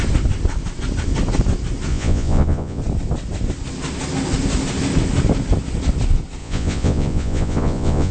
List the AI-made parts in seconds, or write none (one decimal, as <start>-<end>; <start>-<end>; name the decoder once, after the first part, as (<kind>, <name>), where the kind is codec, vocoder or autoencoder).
1.9-2.8 (vocoder, Vocos); 6.4-8.1